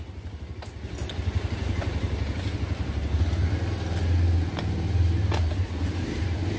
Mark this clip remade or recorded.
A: recorded